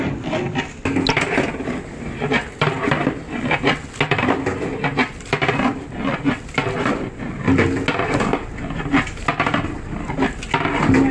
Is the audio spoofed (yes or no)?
no